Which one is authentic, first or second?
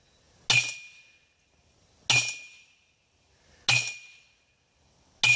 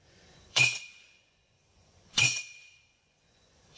first